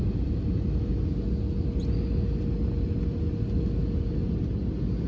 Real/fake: real